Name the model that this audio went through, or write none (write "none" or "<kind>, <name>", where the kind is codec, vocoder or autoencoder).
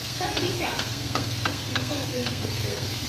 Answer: codec, SNAC